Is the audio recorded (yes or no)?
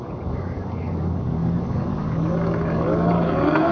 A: no